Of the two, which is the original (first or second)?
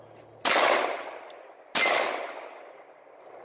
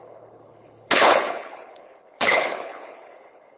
first